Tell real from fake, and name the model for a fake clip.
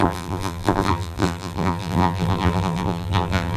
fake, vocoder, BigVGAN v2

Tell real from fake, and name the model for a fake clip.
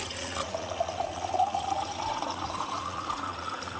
fake, vocoder, Vocos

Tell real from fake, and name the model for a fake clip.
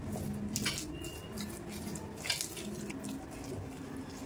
real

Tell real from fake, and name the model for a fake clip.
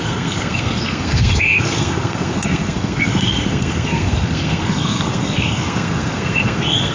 fake, codec, SNAC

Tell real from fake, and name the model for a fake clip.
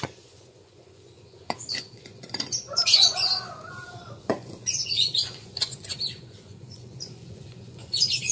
fake, vocoder, Vocos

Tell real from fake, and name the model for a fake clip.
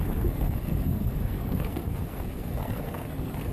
fake, codec, SNAC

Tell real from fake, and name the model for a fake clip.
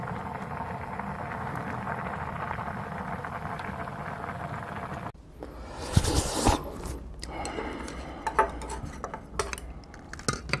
real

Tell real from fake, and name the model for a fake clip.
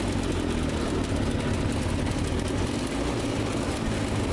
real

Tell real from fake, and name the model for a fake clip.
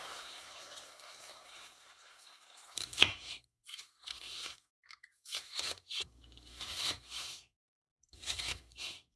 fake, codec, SNAC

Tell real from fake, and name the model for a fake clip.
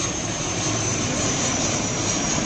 fake, vocoder, BigVGAN v2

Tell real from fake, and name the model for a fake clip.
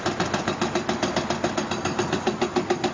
real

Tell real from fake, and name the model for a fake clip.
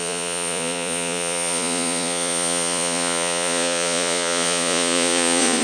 fake, vocoder, Vocos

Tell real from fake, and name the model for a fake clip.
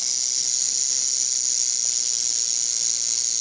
real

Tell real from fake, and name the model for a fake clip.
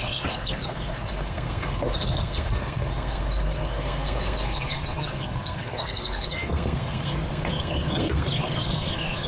fake, codec, SNAC